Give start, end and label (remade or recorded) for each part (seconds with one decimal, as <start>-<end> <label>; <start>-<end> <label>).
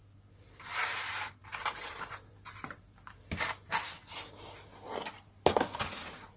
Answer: 0.0-6.4 recorded